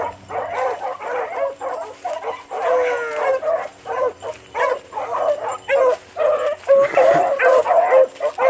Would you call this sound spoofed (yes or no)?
no